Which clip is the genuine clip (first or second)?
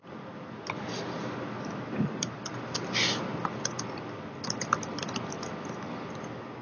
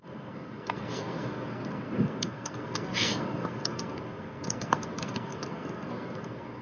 first